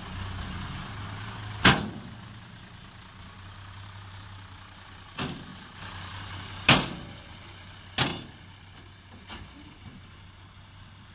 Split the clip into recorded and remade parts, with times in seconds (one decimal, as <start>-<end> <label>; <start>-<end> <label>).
0.0-5.5 recorded; 5.5-6.5 remade; 6.5-11.1 recorded